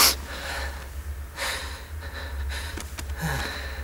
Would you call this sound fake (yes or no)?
no